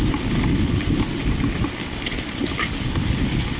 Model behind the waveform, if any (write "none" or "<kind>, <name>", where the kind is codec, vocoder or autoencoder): none